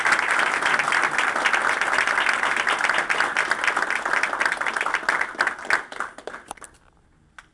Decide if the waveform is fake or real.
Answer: real